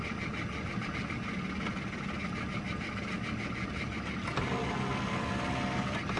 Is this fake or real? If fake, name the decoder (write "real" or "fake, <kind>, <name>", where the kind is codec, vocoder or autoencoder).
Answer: real